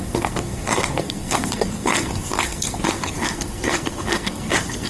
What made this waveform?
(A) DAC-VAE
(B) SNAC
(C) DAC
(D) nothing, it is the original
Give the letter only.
B